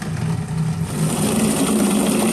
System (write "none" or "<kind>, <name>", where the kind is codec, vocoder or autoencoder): none